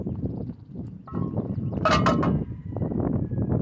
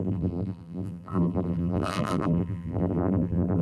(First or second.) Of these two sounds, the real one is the first